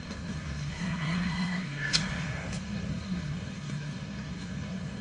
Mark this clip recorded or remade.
remade